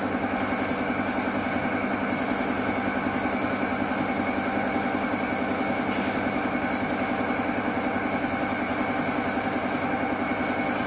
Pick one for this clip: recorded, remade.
recorded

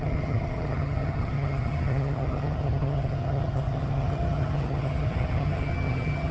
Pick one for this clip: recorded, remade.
remade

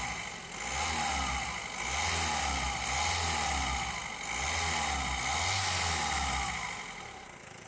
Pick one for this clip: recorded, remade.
recorded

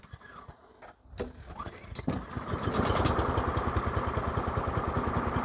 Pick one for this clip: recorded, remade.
recorded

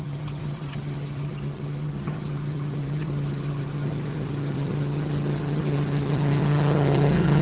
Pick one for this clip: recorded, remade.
remade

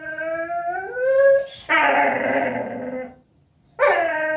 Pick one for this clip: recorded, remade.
recorded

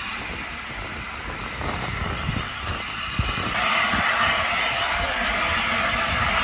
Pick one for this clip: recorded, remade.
recorded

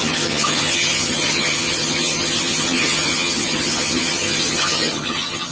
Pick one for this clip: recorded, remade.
remade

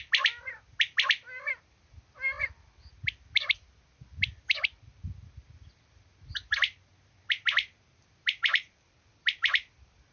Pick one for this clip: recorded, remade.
recorded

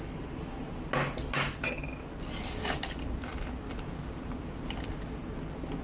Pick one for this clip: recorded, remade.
recorded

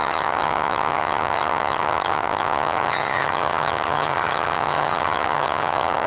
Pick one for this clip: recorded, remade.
remade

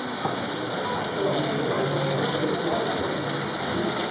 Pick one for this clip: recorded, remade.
recorded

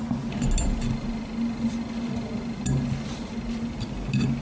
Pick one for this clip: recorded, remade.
recorded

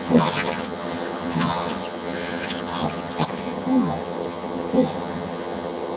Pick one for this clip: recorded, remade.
remade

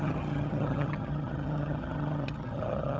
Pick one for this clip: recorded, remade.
remade